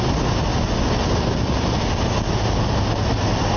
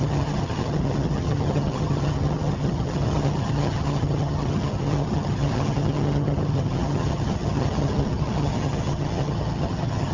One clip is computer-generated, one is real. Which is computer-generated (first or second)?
second